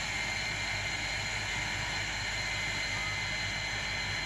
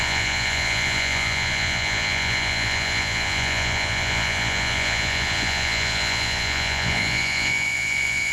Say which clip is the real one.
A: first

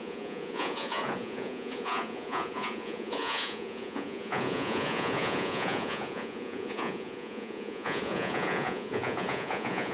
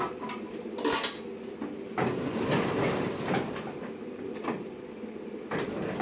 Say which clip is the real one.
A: second